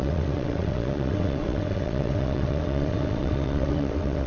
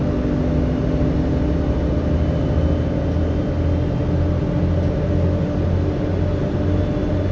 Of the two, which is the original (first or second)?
second